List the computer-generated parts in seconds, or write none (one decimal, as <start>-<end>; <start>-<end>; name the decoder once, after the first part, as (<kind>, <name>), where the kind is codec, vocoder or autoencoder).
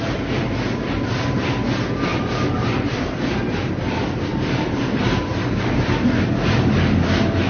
2.1-3.8 (vocoder, BigVGAN v2); 4.3-6.7